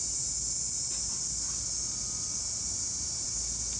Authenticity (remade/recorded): recorded